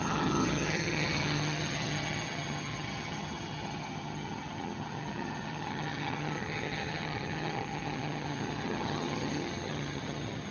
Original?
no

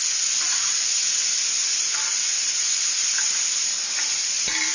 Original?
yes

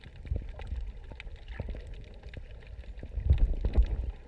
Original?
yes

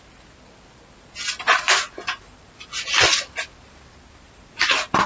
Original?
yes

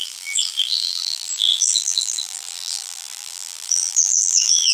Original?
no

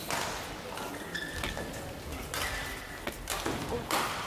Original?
yes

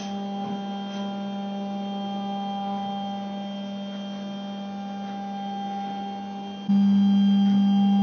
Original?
yes